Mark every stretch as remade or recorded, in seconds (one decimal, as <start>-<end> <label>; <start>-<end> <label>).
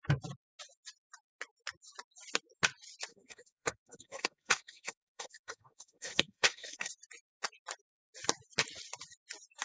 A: 0.0-3.1 recorded; 3.1-6.9 remade; 6.9-9.6 recorded